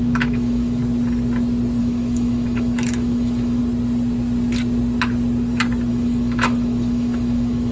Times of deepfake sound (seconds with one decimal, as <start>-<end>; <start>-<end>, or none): 0.0-0.8; 1.8-3.6; 5.9-7.7